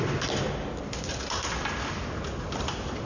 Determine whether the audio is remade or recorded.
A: recorded